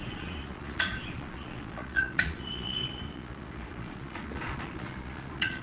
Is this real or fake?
fake